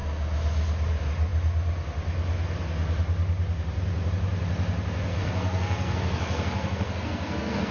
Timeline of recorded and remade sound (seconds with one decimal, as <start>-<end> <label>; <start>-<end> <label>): 0.0-5.1 recorded; 5.1-7.7 remade